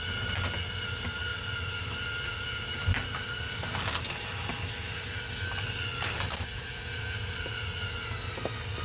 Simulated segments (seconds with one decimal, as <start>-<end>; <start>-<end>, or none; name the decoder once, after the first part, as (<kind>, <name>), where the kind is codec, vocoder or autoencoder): none